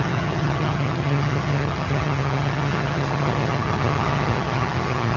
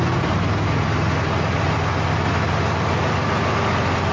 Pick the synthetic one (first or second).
first